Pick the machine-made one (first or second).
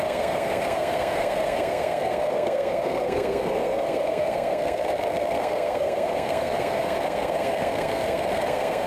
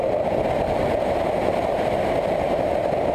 first